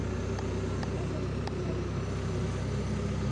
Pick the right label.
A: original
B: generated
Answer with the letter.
A